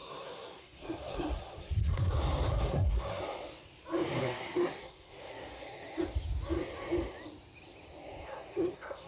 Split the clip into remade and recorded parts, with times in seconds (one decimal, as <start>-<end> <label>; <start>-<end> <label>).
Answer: 0.0-2.1 remade; 2.1-2.5 recorded; 2.5-3.2 remade; 3.2-4.2 recorded; 4.2-6.0 remade; 6.0-8.2 recorded; 8.2-9.1 remade